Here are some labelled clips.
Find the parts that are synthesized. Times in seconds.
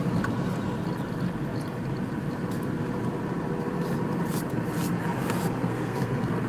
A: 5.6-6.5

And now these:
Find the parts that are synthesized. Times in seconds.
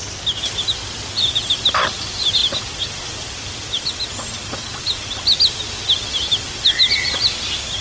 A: none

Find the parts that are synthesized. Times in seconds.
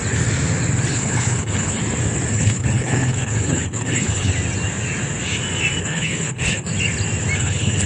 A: 0.9-1.8; 2.3-4.3; 5.8-6.7; 7.4-7.9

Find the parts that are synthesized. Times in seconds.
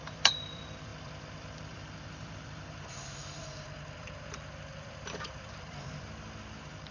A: 0.0-6.9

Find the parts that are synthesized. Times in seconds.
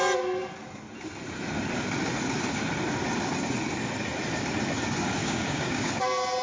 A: 5.2-5.9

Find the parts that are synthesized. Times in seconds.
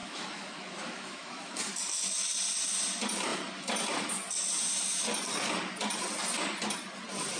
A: 0.0-1.6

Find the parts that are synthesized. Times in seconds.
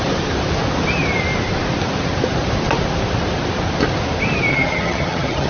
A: 4.5-5.5